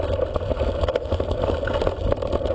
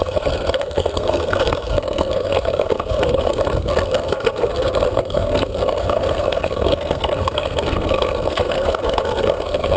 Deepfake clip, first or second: second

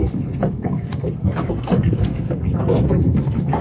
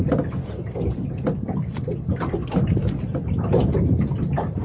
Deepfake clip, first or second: first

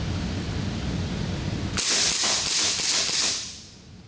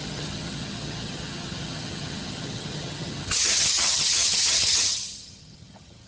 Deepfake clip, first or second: second